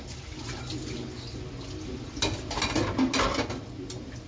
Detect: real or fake real